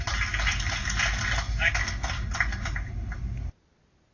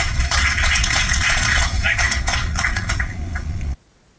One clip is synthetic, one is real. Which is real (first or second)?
first